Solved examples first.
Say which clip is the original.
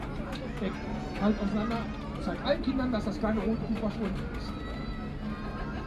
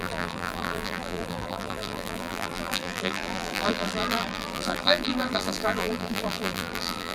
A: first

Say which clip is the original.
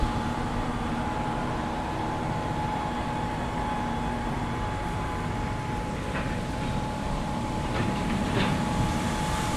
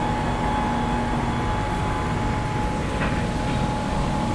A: second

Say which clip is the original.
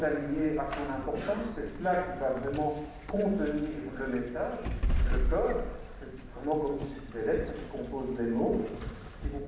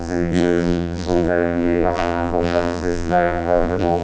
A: first